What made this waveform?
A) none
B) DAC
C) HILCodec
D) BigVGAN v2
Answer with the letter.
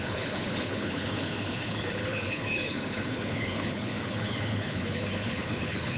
C